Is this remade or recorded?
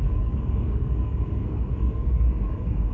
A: remade